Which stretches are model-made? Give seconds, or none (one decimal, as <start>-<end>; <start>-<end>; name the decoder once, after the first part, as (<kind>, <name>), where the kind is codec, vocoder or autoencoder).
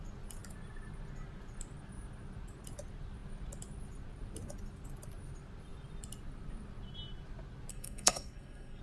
7.7-8.8 (codec, SNAC)